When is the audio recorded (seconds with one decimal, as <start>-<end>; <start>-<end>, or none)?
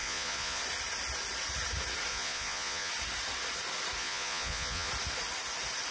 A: 0.6-2.1; 2.9-4.0; 4.9-5.9